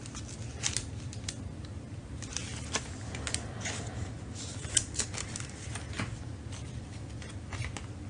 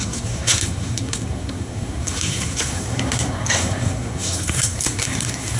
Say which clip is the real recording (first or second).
first